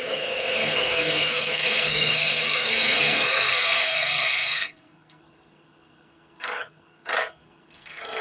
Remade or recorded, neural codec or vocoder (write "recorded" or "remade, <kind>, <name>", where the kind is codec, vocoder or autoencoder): remade, codec, SNAC